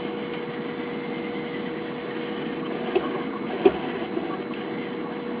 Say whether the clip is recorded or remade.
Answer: recorded